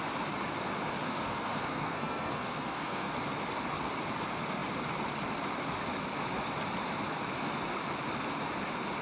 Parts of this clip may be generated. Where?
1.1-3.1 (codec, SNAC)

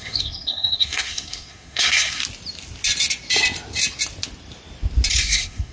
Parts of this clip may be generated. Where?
0.0-2.2 (codec, SNAC); 5.1-5.7

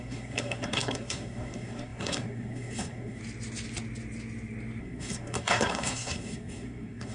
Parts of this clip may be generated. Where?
0.0-3.2 (codec, SNAC); 4.8-7.1

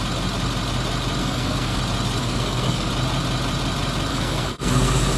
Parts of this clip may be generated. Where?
1.2-1.8 (codec, SNAC); 2.2-2.9; 4.1-5.2